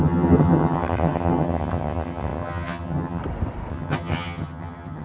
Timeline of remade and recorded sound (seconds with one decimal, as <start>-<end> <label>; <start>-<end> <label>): 0.0-3.2 remade; 3.2-3.7 recorded; 3.7-5.0 remade